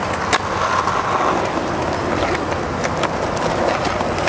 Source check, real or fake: real